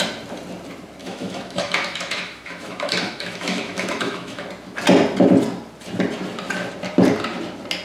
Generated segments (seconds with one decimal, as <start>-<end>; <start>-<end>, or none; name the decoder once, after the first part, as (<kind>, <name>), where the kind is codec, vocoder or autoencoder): 1.0-4.5 (autoencoder, DAC-VAE)